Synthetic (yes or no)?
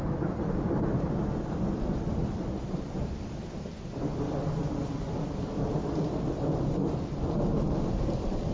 yes